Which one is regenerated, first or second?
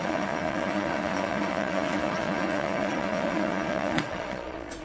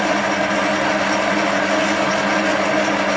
first